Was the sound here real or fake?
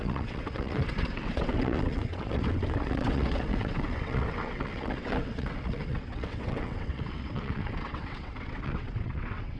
fake